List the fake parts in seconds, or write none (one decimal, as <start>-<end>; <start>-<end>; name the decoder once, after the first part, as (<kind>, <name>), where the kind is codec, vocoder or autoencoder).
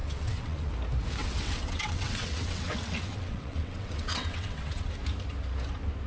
0.0-0.7 (vocoder, WaveNeXt); 1.2-4.9